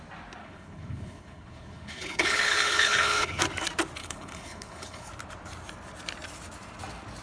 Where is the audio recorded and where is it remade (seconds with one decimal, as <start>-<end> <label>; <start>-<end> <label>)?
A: 0.0-0.4 recorded; 0.4-3.4 remade; 3.4-4.0 recorded; 4.0-5.1 remade; 5.1-7.2 recorded